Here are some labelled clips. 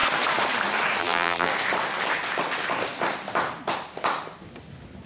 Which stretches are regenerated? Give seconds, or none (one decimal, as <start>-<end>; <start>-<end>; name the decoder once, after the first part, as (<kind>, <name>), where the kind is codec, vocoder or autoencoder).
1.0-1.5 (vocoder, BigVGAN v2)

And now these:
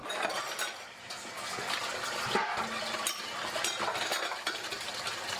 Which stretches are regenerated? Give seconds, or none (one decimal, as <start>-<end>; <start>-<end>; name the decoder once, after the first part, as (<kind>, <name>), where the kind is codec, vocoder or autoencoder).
none

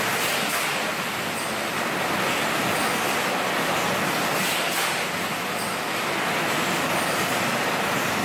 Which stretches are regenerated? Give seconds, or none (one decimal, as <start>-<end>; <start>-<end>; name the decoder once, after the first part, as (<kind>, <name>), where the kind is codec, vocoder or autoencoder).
none

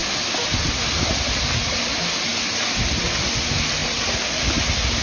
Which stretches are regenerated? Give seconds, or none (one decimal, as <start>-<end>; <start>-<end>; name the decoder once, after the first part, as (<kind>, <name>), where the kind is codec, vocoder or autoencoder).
none